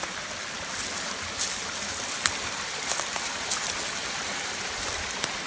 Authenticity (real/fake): real